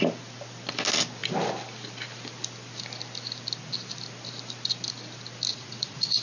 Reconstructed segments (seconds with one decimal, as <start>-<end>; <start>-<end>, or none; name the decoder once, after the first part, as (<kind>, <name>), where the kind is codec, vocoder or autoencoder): 5.5-6.2 (vocoder, Vocos)